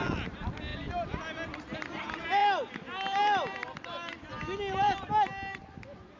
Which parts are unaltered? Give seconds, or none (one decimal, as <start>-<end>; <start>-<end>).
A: 0.0-6.2